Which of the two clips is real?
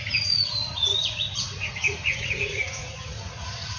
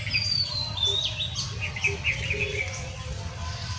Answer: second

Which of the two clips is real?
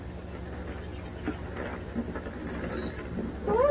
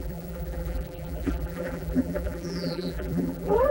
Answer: first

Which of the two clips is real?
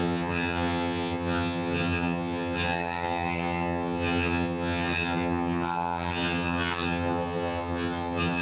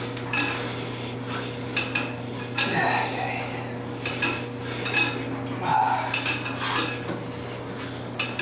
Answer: second